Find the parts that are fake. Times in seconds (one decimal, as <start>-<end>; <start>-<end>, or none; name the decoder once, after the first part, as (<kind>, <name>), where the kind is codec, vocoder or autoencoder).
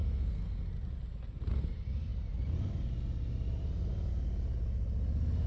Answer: 0.0-0.7 (codec, SNAC)